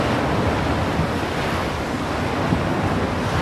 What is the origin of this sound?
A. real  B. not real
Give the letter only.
A